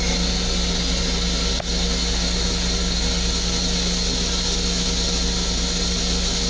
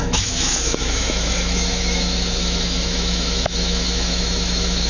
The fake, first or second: second